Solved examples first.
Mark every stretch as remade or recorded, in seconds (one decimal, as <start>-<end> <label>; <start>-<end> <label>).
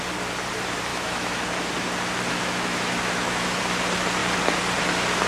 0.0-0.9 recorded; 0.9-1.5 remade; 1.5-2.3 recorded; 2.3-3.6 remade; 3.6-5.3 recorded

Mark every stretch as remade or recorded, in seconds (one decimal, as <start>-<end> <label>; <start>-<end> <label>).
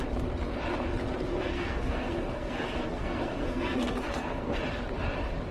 0.0-1.3 recorded; 1.3-4.6 remade; 4.6-5.5 recorded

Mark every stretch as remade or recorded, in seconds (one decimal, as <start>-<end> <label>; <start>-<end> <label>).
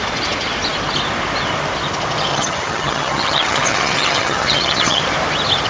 0.0-2.3 recorded; 2.3-5.0 remade; 5.0-5.7 recorded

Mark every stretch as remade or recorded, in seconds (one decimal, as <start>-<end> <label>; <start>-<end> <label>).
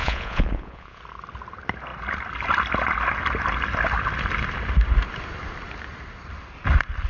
0.0-1.0 remade; 1.0-7.1 recorded